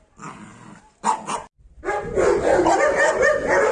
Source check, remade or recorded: recorded